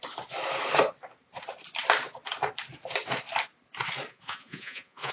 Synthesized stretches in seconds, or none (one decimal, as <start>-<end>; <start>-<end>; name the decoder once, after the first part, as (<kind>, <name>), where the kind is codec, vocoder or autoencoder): 4.1-5.1 (vocoder, Vocos)